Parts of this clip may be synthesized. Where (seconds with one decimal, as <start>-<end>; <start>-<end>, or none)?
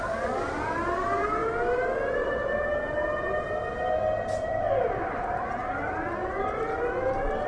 none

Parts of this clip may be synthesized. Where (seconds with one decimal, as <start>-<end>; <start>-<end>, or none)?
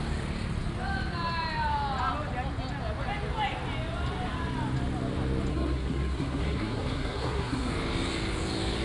5.5-7.7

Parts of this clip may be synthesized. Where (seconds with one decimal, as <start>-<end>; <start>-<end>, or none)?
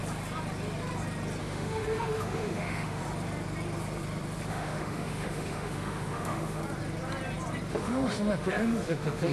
1.4-3.0; 4.5-6.6; 7.7-9.3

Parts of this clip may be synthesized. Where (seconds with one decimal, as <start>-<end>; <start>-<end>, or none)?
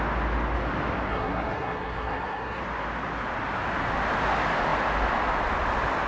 1.1-2.6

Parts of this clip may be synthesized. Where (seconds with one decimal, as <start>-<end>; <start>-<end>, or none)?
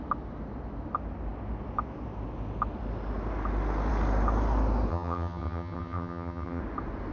4.9-6.6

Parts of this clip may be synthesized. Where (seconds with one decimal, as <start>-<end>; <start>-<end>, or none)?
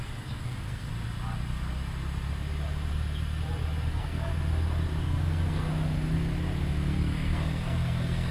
0.0-0.9; 3.9-4.3; 5.0-5.7; 6.7-8.3